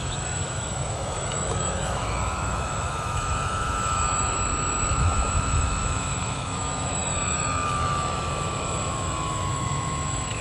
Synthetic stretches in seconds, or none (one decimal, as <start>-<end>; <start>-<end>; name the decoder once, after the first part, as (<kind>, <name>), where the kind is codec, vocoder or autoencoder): 0.0-10.4 (autoencoder, DAC-VAE)